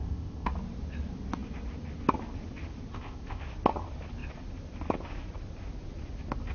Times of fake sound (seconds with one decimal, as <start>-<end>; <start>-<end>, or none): 0.0-0.5; 2.9-3.4